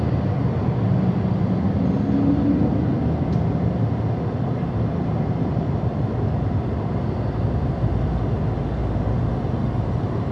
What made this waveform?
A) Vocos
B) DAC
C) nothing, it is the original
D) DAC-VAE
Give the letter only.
C